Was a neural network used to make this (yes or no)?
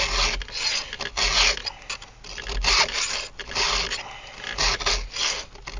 no